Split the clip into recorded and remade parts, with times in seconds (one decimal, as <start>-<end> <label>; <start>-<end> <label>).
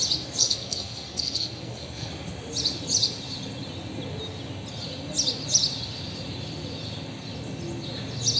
0.0-0.4 recorded; 0.4-2.1 remade; 2.1-8.4 recorded